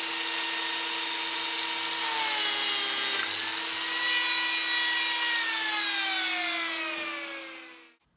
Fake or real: real